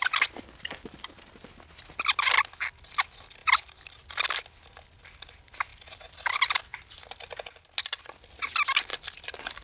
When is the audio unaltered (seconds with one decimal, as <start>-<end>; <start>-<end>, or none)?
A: 0.0-9.6